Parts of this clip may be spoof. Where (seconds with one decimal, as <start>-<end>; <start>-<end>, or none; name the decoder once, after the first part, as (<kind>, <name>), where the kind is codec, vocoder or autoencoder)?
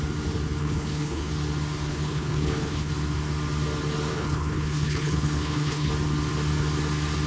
0.6-1.3 (codec, HILCodec); 1.9-2.9; 4.1-5.9